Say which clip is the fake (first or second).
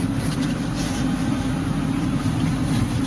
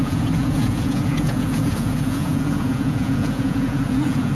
second